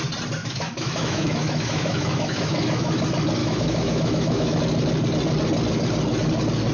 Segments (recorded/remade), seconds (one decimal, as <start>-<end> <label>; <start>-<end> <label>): 0.0-0.4 recorded; 0.4-3.0 remade; 3.0-3.4 recorded; 3.4-4.6 remade; 4.6-6.7 recorded